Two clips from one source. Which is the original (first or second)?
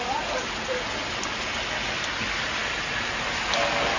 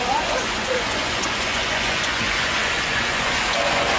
first